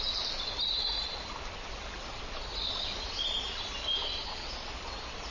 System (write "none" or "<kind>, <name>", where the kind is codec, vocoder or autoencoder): none